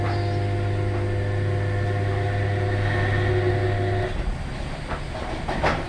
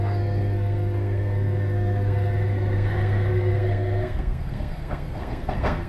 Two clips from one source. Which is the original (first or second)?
first